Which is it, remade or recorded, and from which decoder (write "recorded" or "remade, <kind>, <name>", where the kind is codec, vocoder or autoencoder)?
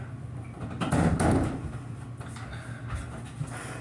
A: recorded